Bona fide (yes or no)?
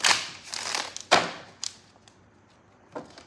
yes